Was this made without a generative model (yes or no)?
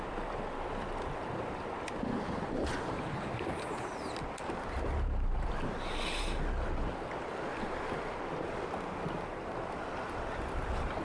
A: yes